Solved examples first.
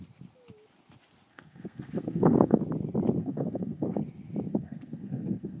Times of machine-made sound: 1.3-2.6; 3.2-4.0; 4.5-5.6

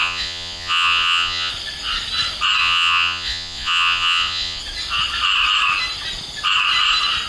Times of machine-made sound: 0.0-1.5; 2.6-4.6

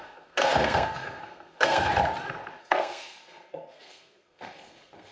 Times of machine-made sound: 0.0-1.9; 2.6-5.1

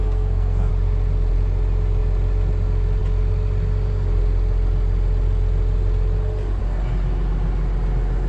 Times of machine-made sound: 0.0-0.7

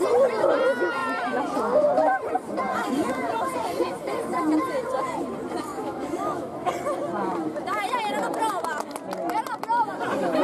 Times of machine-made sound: 5.7-6.7

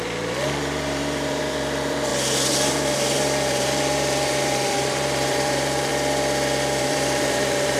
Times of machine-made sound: 0.0-2.1; 2.7-5.9; 6.8-7.8